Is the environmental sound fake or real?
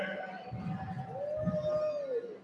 real